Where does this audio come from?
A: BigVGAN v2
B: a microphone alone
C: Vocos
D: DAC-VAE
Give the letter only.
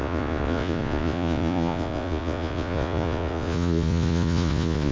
C